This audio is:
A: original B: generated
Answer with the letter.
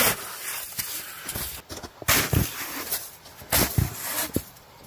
A